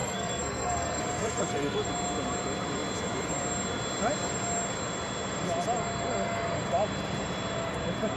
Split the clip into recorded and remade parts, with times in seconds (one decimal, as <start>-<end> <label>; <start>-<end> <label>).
0.0-1.9 remade; 1.9-8.2 recorded